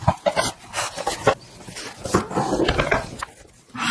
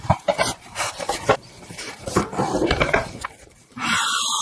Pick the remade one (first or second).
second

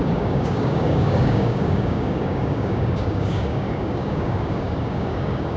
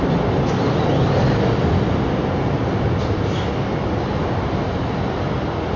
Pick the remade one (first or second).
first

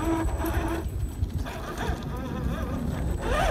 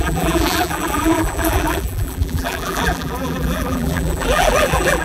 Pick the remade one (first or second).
second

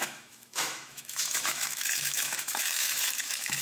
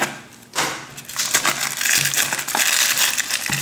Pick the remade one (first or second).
first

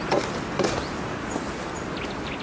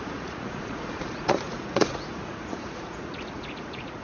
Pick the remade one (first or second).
second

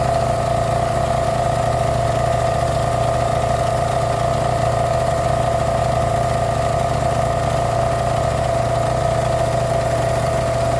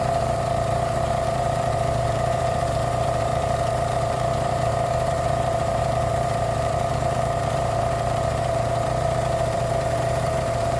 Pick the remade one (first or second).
second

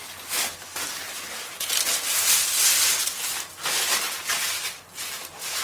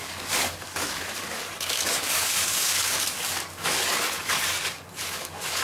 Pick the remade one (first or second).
second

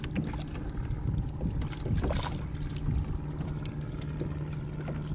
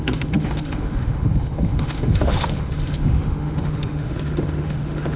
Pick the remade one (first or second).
second